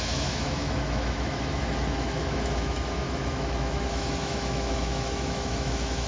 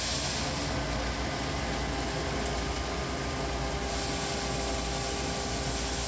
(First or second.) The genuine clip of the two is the second